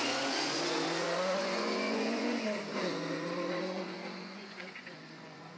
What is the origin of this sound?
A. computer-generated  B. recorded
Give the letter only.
A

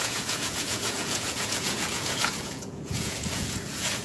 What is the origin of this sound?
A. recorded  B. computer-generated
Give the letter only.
B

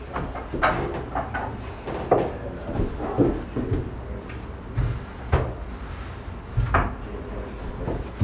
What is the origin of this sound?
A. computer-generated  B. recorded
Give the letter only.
B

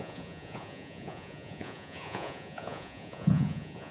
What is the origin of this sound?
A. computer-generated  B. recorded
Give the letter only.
A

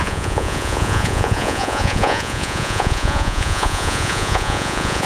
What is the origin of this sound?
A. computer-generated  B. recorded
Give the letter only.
A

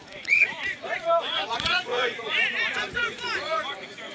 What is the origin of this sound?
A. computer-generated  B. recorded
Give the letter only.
A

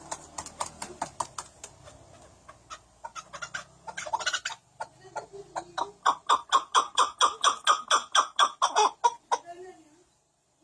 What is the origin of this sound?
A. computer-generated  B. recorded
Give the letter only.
B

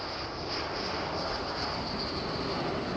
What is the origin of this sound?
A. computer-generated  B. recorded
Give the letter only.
B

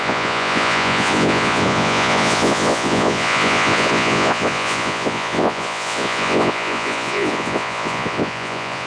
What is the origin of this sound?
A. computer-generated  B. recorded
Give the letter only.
A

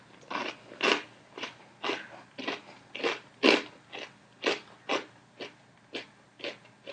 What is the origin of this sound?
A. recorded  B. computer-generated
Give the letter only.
A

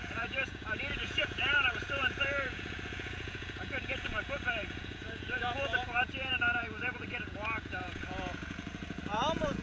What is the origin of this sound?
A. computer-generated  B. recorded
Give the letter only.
A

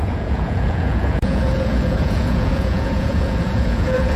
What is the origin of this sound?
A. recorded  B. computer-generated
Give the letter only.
B